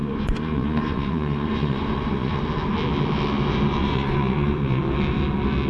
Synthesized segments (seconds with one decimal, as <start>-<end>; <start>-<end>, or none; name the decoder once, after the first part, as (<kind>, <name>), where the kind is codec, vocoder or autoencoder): 0.0-2.4 (vocoder, Vocos); 3.8-4.8